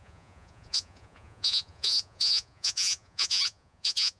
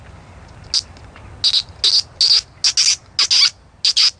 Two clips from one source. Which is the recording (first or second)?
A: second